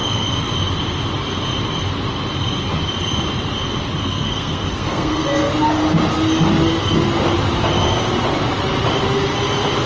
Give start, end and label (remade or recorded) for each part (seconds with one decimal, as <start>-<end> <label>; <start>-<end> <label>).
0.0-0.5 remade; 0.5-4.0 recorded; 4.0-5.5 remade; 5.5-9.9 recorded